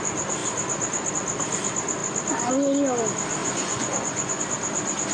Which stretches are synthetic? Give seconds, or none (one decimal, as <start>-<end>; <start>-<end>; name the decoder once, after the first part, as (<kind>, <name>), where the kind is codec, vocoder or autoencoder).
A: 3.4-4.4 (vocoder, Vocos)